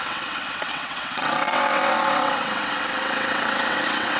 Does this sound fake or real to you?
fake